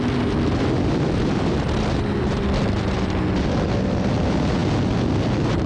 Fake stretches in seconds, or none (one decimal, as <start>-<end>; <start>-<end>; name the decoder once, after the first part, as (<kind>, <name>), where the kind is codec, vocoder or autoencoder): none